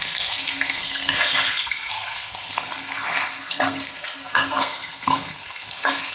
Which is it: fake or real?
fake